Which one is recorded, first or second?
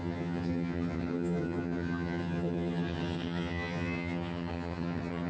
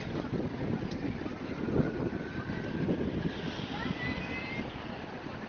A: second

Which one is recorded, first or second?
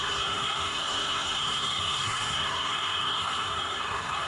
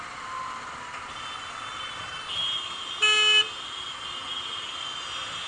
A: second